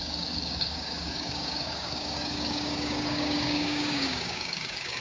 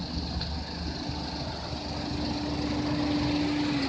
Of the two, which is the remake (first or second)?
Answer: first